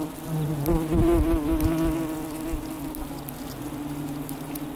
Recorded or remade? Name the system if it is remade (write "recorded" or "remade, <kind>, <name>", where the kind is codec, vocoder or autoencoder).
recorded